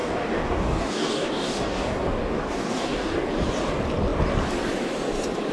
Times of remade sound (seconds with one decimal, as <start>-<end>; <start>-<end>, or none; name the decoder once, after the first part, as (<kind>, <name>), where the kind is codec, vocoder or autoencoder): 0.0-3.3 (codec, DAC)